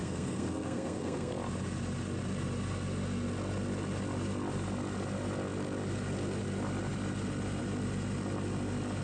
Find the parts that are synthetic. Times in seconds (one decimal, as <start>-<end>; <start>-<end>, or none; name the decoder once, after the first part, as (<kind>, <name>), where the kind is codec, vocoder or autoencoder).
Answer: 0.0-1.3 (codec, SNAC)